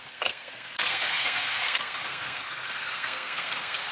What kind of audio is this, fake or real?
fake